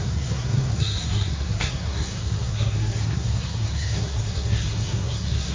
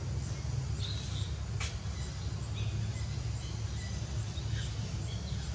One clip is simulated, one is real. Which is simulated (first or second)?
first